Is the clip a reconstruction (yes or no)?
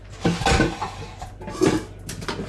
no